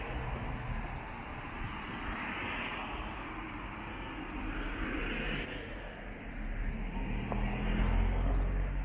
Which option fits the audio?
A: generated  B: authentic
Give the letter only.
B